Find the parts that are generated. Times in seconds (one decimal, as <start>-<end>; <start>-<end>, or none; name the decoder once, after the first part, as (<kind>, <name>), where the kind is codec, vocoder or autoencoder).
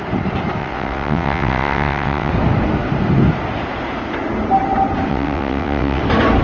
0.6-2.3 (vocoder, WaveNeXt); 5.1-6.0